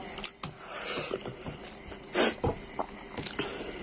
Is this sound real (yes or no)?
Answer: yes